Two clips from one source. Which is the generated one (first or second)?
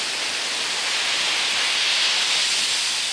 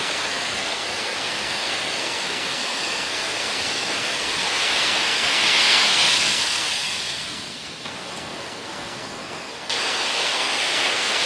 second